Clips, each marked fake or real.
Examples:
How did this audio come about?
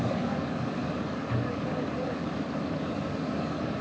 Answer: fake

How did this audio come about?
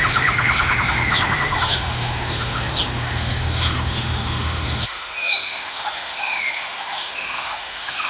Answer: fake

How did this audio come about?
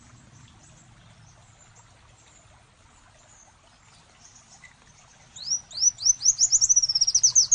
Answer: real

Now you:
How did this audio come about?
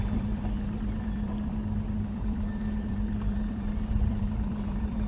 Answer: fake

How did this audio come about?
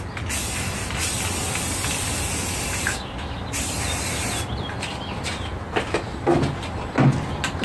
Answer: real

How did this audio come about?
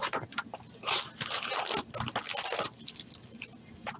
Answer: real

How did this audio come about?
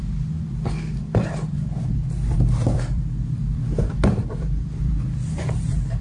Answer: fake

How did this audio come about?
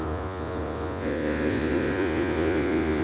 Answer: fake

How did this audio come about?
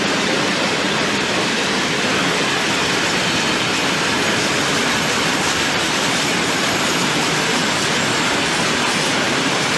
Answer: fake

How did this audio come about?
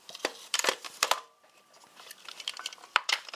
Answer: fake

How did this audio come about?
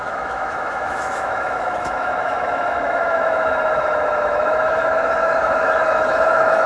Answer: fake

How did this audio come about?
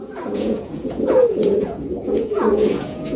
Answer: fake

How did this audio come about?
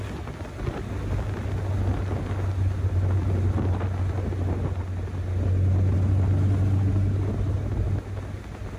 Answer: real